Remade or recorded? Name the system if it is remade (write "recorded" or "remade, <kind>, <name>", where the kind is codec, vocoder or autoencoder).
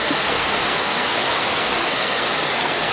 remade, codec, SNAC